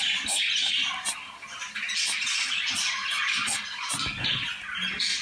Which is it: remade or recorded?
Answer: recorded